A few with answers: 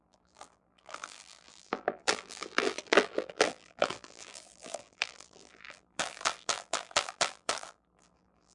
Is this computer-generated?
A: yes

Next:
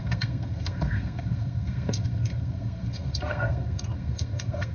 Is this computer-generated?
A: yes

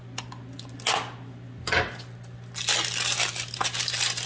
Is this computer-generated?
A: no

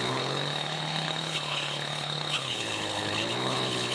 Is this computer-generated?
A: yes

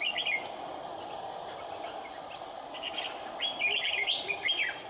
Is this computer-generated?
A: yes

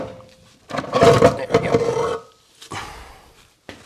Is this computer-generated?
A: no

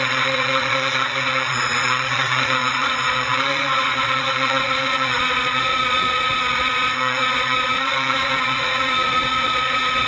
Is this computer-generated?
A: yes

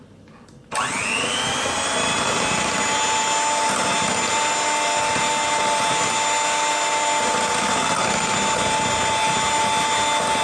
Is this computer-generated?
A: no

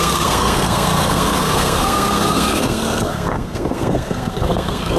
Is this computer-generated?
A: yes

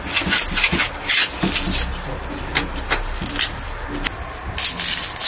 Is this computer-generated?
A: no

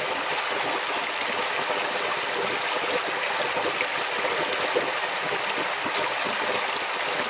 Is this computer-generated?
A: no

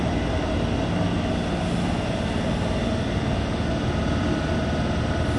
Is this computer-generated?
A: no